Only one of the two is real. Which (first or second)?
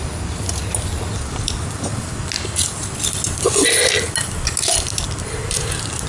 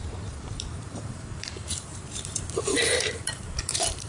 first